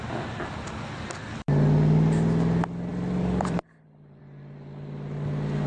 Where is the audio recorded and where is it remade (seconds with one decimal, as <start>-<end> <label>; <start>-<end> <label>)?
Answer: 0.0-2.9 recorded; 2.9-4.2 remade; 4.2-5.7 recorded